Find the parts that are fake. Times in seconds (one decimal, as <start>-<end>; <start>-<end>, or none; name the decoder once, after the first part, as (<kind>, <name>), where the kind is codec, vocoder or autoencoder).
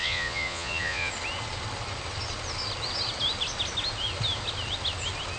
0.0-1.1 (vocoder, Vocos)